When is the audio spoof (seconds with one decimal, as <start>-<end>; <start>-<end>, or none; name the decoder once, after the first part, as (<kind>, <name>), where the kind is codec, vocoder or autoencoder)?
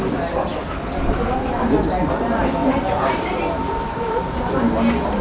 2.6-4.5 (vocoder, BigVGAN v2)